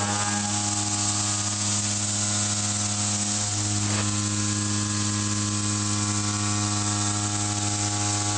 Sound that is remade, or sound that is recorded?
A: recorded